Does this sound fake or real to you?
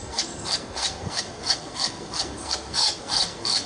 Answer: fake